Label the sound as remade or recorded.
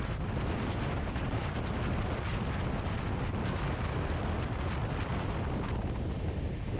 recorded